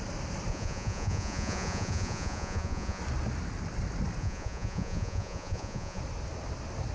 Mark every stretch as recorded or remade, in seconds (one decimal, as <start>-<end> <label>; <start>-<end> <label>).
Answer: 0.0-0.5 recorded; 0.5-3.0 remade; 3.0-4.2 recorded; 4.2-6.0 remade; 6.0-6.9 recorded